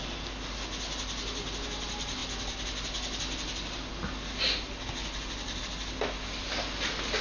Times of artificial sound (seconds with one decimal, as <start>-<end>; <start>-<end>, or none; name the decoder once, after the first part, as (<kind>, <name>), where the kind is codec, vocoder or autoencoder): none